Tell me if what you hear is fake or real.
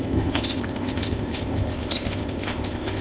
fake